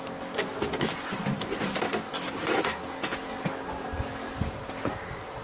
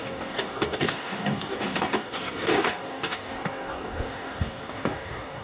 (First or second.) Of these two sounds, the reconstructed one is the second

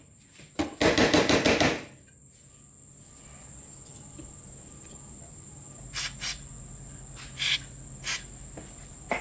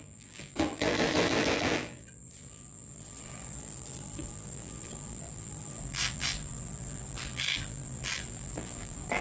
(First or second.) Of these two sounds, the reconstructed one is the second